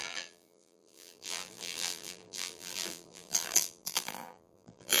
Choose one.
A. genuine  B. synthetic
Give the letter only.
B